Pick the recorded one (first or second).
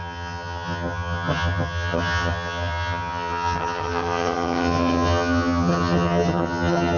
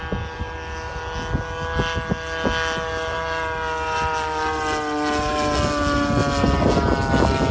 second